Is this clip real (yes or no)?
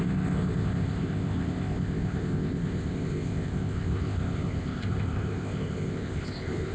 no